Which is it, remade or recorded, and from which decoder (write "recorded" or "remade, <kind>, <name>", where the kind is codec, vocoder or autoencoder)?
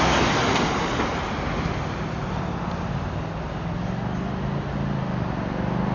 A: recorded